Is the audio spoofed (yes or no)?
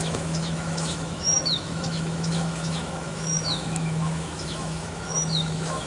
yes